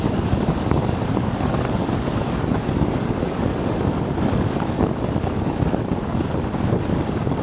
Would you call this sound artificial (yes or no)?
yes